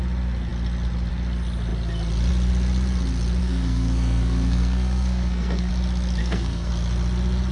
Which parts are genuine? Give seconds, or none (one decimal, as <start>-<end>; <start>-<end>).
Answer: 0.0-3.4; 5.7-6.2; 6.7-7.5